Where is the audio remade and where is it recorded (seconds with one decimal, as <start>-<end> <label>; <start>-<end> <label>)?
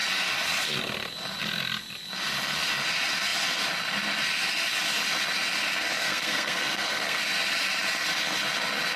0.0-6.0 recorded; 6.0-7.2 remade; 7.2-9.0 recorded